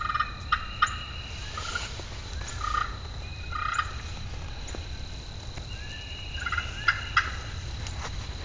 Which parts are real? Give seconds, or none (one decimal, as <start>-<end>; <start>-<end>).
0.0-8.4